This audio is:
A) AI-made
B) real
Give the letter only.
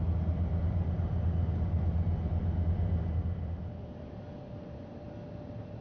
B